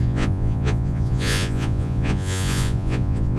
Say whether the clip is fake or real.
fake